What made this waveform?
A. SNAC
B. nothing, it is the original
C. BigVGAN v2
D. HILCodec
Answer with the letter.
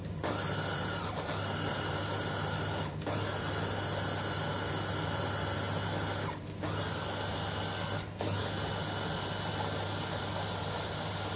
B